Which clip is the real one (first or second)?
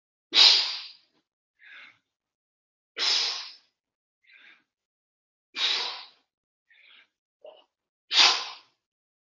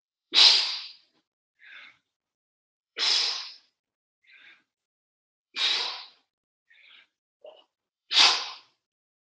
first